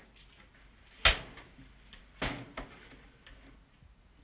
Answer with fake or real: real